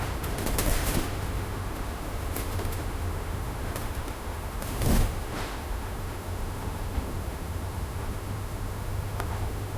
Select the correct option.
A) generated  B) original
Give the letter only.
A